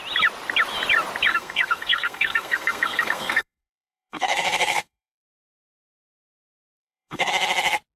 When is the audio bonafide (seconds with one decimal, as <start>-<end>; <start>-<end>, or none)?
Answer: 0.0-1.3; 6.0-6.5; 7.3-8.0